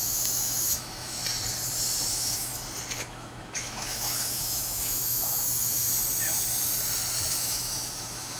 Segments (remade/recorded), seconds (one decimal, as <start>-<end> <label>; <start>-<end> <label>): 0.0-1.2 remade; 1.2-2.1 recorded; 2.1-2.5 remade; 2.5-3.0 recorded; 3.0-5.9 remade; 5.9-7.4 recorded; 7.4-8.4 remade